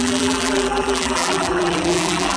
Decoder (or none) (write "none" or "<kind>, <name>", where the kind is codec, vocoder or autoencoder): vocoder, BigVGAN v2